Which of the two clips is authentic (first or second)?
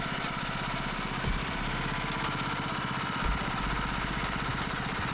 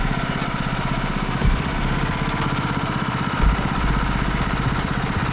first